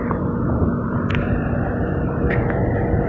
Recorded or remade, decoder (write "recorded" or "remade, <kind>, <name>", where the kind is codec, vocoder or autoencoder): recorded